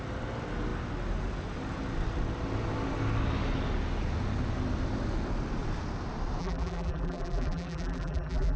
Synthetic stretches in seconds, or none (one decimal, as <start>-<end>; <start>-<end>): 6.4-8.6